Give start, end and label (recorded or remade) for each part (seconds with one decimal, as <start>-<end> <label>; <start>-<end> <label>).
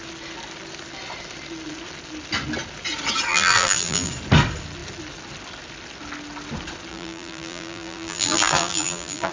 0.0-3.3 recorded; 3.3-4.1 remade; 4.1-6.9 recorded; 6.9-9.3 remade